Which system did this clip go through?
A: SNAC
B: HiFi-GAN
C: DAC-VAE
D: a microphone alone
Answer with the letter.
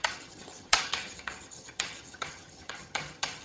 B